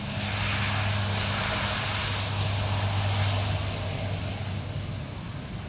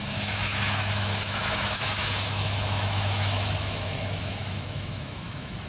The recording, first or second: first